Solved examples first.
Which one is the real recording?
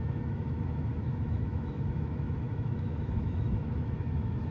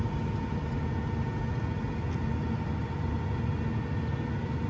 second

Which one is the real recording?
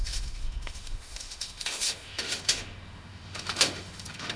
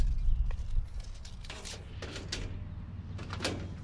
second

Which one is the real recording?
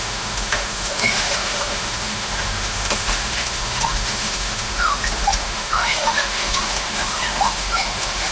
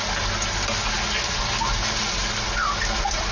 second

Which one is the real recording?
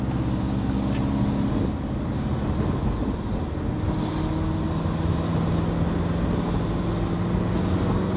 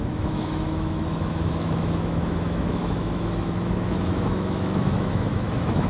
first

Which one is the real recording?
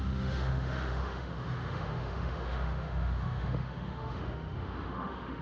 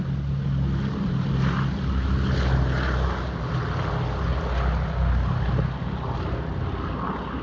second